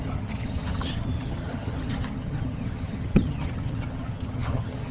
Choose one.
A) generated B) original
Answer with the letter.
A